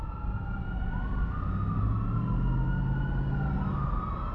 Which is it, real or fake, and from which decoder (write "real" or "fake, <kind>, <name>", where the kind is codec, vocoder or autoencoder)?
real